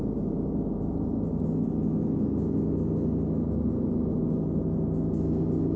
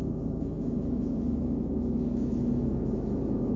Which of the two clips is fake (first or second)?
second